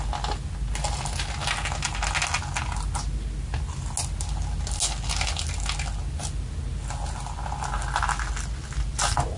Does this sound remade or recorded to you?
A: recorded